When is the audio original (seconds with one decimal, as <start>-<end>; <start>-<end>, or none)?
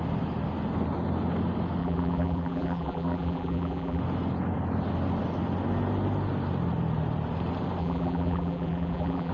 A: 0.0-1.8; 4.0-7.8